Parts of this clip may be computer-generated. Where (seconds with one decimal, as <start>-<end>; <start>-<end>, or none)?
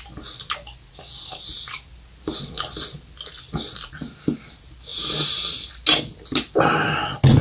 none